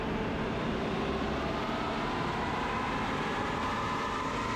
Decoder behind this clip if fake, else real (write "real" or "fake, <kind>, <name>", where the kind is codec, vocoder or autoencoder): real